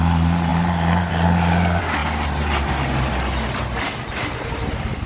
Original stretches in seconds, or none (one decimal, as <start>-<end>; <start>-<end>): 0.0-5.1